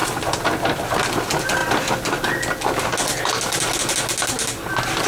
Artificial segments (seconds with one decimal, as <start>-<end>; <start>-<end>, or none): 0.0-0.8